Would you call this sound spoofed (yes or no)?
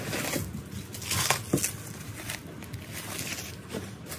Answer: no